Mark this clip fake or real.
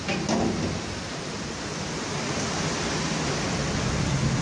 real